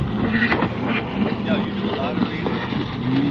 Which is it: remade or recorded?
recorded